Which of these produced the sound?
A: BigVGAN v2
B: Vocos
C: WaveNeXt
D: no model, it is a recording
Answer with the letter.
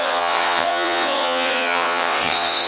C